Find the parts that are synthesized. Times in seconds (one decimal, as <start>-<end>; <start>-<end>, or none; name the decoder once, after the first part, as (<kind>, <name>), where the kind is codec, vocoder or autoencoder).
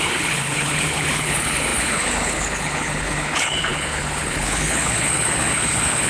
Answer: 0.0-6.1 (codec, HILCodec)